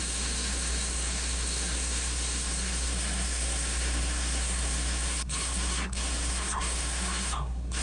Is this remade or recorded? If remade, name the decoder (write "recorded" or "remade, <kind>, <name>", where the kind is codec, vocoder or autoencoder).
remade, codec, SNAC